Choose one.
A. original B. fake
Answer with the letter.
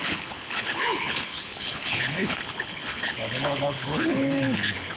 B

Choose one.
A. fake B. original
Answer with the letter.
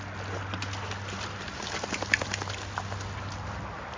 B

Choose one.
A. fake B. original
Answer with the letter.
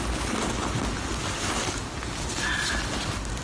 B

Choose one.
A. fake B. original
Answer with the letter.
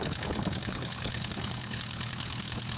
A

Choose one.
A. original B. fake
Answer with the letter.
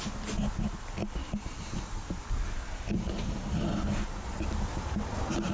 A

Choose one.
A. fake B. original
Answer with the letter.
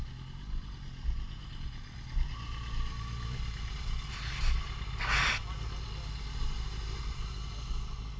B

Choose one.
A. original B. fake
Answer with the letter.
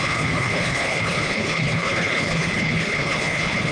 B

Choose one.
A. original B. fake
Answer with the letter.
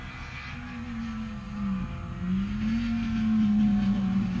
A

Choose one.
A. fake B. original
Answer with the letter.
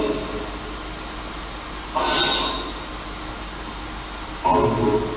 B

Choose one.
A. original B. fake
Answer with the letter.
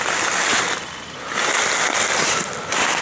A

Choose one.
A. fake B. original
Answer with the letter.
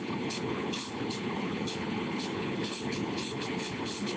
A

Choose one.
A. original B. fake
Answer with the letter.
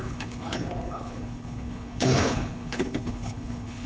B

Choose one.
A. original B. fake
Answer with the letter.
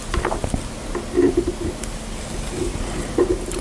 A